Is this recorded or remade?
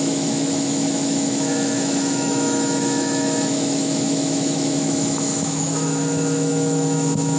remade